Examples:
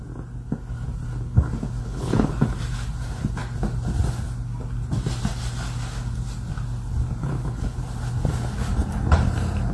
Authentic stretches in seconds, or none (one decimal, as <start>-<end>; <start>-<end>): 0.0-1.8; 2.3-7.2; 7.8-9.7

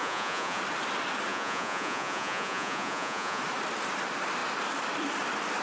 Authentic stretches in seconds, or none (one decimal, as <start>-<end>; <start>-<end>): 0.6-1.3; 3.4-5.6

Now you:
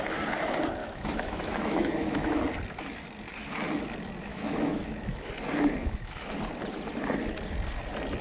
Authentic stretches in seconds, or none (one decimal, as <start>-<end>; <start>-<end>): 0.0-0.8; 2.4-4.3; 5.3-5.8; 6.3-8.2

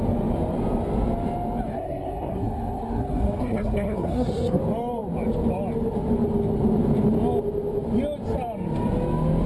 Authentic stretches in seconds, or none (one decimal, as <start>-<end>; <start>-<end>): 0.0-1.7; 4.6-9.5

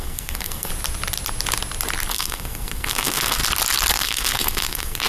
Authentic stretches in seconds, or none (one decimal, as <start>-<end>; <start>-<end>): 0.7-2.1; 3.4-3.9

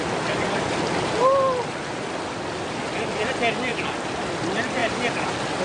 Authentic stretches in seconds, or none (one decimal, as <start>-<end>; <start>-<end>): 0.0-5.6

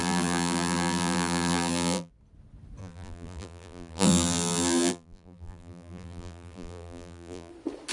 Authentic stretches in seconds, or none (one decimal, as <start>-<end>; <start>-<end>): 2.1-2.8; 7.5-7.9

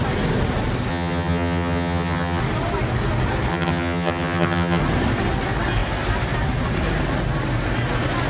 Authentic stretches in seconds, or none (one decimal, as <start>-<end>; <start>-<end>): 0.0-0.9; 2.4-3.5; 4.8-8.3